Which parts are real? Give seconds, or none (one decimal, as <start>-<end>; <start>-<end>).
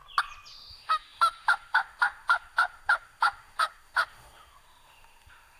0.0-0.7